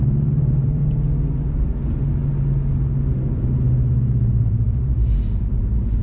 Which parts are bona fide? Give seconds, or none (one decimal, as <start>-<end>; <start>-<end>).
0.8-4.4